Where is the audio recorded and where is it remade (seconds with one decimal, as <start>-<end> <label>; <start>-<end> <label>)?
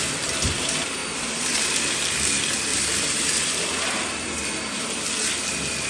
0.0-1.0 recorded; 1.0-1.8 remade; 1.8-2.7 recorded; 2.7-4.8 remade; 4.8-5.9 recorded